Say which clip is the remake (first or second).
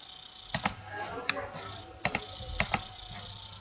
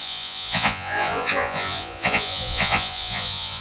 second